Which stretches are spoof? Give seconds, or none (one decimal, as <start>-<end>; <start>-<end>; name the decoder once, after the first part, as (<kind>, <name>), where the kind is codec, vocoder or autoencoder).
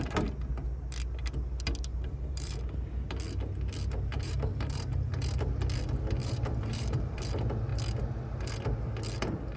1.9-2.6 (vocoder, BigVGAN v2); 4.1-5.1; 6.2-7.2